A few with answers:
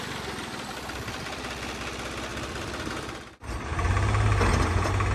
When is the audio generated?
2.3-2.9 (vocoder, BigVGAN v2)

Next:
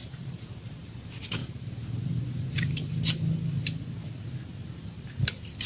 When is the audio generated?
0.0-0.9 (vocoder, BigVGAN v2); 1.4-2.9